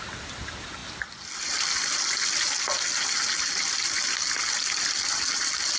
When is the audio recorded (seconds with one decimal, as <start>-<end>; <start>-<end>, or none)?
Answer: 0.0-5.8

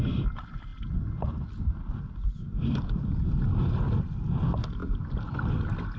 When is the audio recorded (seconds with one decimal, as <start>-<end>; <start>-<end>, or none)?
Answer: 0.0-6.0

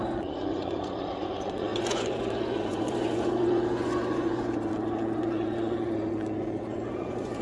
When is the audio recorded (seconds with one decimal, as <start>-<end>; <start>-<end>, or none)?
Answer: none

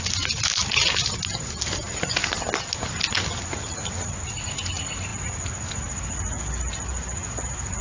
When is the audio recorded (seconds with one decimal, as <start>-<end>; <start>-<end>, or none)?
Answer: 0.0-7.8

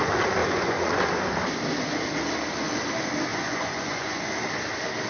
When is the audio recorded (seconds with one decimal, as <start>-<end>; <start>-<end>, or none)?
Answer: 0.0-0.4; 1.1-3.3; 4.3-5.1

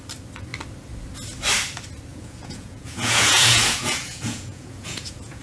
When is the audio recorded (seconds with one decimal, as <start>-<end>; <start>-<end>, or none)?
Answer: 0.0-2.1

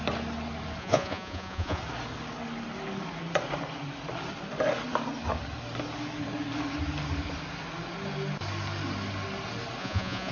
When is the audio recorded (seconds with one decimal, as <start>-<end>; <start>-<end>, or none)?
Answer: 0.0-0.8; 1.8-9.8